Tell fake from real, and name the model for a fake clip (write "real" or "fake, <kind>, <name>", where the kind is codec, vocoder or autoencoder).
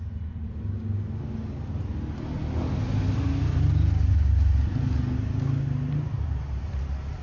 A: real